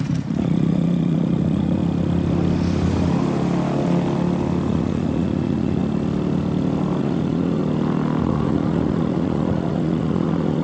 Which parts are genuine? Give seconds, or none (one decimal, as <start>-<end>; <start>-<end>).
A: 1.8-4.7; 5.8-7.0; 7.6-8.2